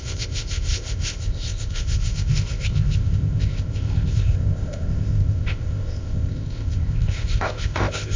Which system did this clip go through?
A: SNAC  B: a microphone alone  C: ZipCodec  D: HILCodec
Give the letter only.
C